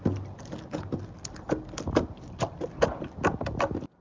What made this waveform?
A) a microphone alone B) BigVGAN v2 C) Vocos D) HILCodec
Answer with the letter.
A